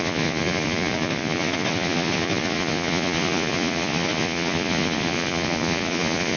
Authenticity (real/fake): fake